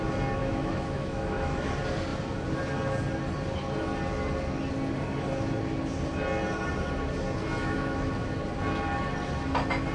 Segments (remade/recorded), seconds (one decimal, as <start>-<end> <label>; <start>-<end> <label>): 0.0-0.4 recorded; 0.4-1.7 remade; 1.7-7.6 recorded; 7.6-8.1 remade; 8.1-9.9 recorded